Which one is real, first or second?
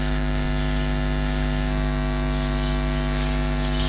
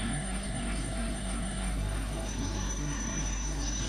first